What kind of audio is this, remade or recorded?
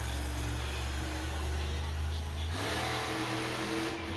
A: recorded